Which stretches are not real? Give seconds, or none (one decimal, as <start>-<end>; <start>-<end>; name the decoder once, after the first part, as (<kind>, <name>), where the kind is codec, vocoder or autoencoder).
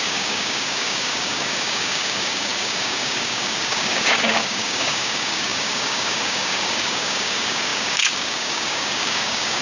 0.0-9.6 (codec, DAC)